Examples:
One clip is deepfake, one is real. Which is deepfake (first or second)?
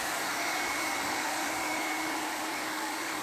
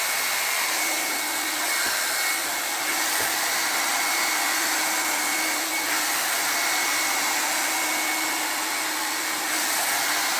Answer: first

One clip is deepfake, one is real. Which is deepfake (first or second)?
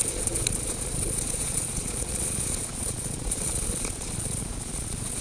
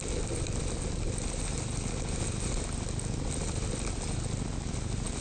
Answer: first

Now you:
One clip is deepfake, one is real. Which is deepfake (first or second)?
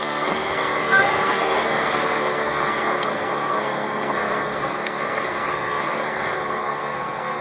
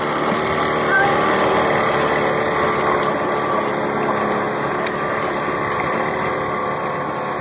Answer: first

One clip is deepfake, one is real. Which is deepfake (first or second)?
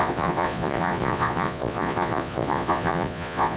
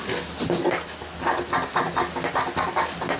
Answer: first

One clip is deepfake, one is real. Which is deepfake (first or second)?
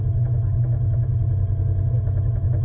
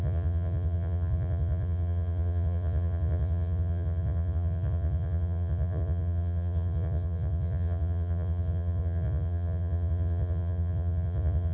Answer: second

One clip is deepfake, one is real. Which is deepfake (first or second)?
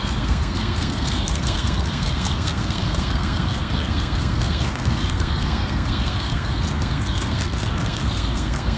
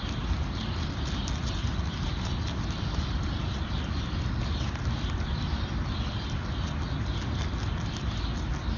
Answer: first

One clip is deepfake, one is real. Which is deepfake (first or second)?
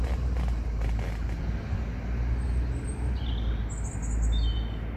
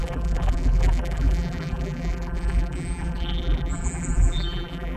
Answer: second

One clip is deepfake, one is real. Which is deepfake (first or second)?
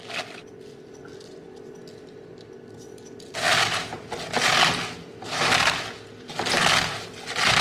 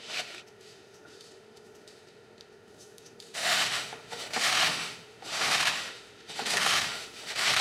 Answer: second